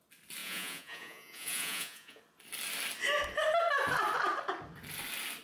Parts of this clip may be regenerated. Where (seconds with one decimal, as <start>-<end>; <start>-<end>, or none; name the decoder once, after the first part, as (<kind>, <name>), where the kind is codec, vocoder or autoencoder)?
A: 0.4-2.2 (vocoder, Vocos)